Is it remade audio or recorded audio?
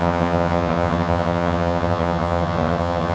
remade